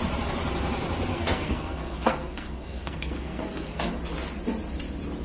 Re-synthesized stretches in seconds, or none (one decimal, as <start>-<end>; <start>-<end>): 1.1-3.9